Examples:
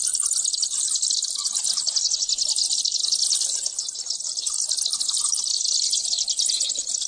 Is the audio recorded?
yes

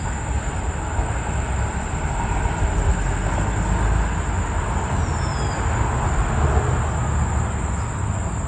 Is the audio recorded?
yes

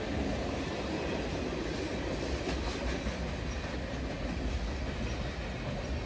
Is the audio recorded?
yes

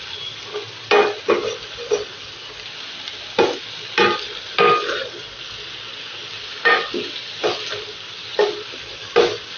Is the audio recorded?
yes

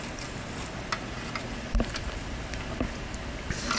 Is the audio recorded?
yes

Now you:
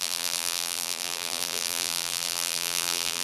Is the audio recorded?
no